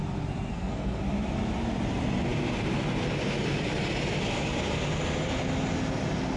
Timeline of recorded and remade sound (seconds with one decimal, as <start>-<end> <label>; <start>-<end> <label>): 0.0-0.5 recorded; 0.5-1.0 remade; 1.0-6.4 recorded